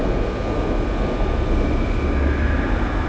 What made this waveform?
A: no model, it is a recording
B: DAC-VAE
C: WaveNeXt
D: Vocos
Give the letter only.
A